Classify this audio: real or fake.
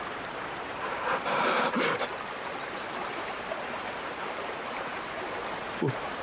fake